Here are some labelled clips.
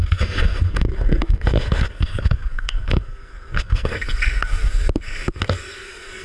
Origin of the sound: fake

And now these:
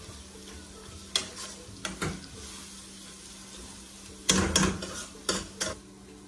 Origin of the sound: real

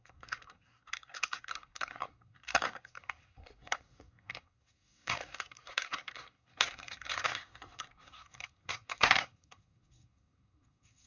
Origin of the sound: fake